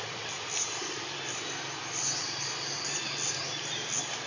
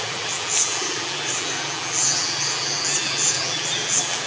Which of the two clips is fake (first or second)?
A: second